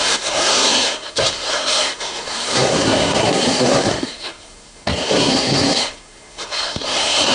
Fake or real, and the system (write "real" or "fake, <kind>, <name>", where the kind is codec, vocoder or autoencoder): fake, codec, SNAC